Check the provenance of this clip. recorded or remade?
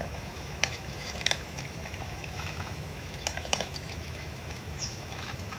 remade